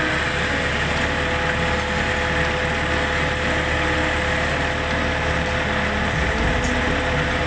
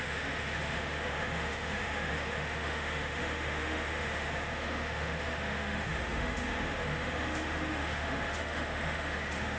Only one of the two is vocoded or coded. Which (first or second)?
second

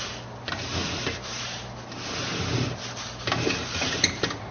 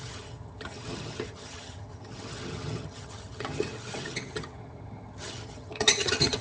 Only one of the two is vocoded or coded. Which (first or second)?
second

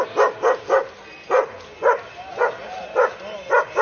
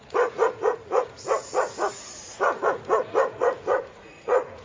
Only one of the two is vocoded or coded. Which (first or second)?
second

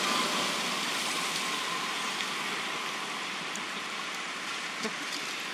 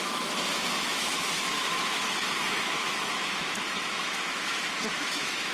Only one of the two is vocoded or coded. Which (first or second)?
second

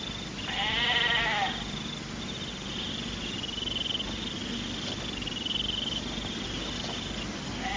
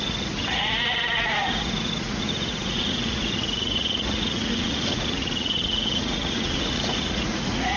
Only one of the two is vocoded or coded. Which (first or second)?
second